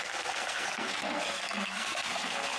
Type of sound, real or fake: fake